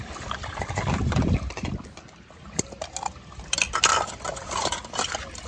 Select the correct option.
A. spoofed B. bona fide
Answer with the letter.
B